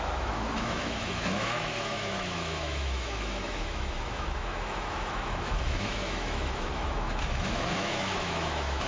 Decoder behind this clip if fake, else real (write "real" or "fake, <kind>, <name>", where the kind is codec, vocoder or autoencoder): fake, autoencoder, DAC-VAE